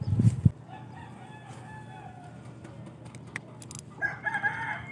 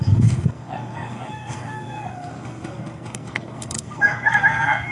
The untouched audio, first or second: first